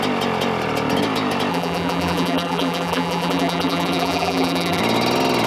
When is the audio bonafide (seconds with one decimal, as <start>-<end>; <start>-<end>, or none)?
0.0-1.5; 4.8-5.5